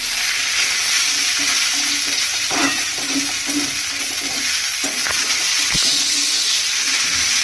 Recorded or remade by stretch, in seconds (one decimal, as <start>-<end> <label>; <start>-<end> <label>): 0.0-2.3 recorded; 2.3-3.2 remade; 3.2-7.4 recorded